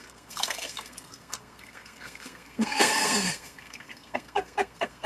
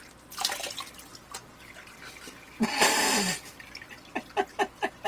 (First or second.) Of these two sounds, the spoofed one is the first